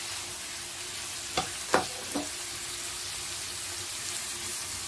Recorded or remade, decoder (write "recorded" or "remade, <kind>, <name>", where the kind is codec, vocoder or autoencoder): recorded